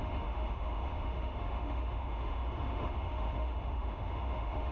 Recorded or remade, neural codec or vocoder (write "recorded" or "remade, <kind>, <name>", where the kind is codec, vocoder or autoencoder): remade, autoencoder, DAC-VAE